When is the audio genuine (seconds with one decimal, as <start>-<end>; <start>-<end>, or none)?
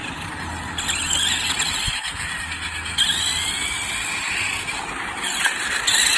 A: 0.0-1.9; 2.3-6.2